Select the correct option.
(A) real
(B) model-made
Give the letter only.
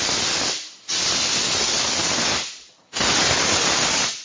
A